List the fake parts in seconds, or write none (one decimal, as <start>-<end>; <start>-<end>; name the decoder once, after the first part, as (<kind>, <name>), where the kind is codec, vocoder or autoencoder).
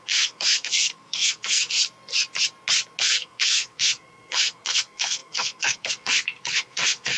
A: 0.0-1.8 (codec, SNAC); 3.0-7.2